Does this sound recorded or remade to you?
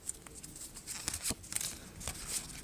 recorded